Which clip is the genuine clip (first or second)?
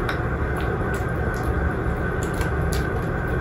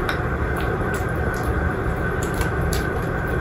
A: first